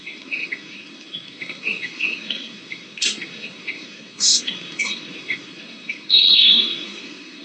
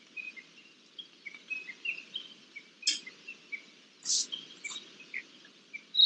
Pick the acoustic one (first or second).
second